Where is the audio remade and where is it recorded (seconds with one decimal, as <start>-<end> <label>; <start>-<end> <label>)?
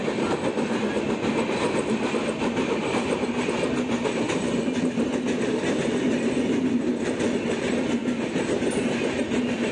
0.0-9.7 recorded